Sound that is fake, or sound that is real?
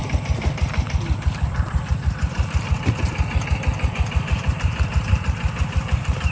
fake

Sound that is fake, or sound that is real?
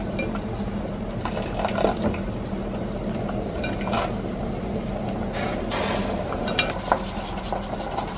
real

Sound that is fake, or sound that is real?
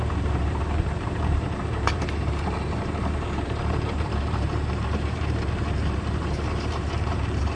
fake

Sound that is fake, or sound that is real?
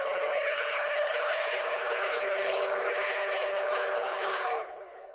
fake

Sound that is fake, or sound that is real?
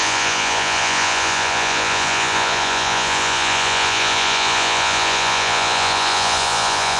fake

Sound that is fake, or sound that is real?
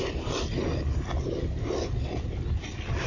real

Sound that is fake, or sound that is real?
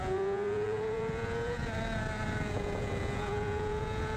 fake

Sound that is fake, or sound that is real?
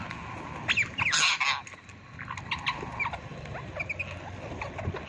real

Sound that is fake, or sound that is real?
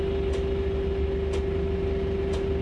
real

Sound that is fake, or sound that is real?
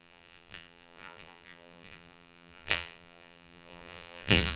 fake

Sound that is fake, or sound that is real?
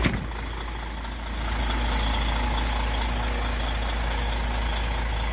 real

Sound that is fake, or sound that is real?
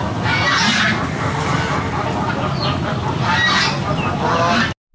real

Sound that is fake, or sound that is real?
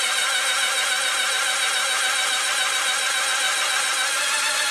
real